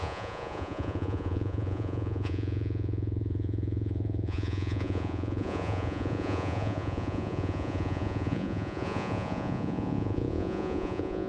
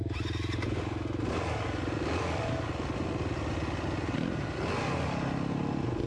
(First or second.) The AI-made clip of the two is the first